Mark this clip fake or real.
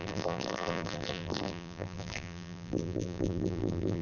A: fake